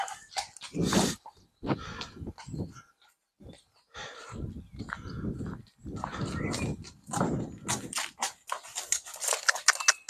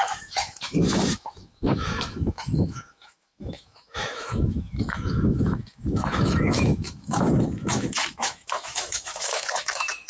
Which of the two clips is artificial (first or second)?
second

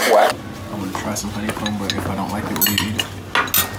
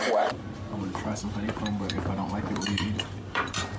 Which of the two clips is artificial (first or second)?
second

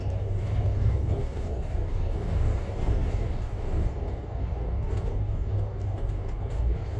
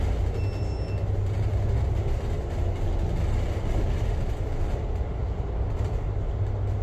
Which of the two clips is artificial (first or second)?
first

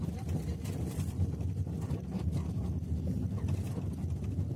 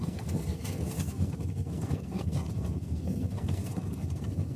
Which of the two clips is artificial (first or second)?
second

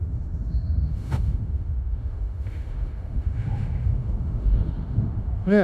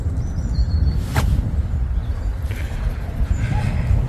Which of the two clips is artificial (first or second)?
first